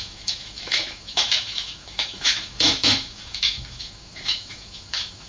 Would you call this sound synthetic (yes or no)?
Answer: yes